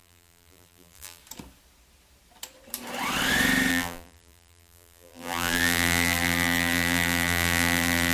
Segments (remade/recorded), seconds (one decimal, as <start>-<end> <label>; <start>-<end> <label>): 0.0-1.2 remade; 1.2-3.7 recorded; 3.7-8.1 remade